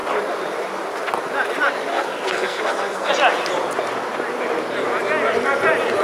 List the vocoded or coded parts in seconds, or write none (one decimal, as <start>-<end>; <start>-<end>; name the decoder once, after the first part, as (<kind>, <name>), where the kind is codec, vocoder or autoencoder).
1.9-3.1 (codec, SNAC)